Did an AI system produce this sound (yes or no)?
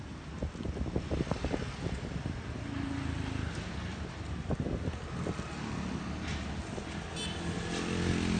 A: no